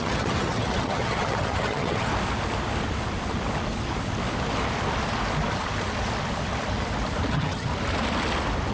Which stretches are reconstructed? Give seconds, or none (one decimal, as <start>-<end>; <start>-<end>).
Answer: 0.0-2.1; 7.3-7.7